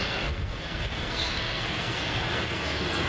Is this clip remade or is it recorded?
remade